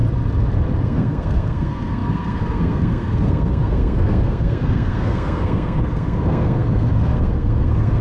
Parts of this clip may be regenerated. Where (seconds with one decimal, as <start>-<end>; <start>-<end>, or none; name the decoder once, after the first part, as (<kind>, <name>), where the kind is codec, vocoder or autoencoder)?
0.8-8.0 (codec, SNAC)